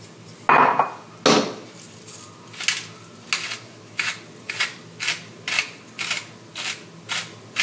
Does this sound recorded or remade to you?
recorded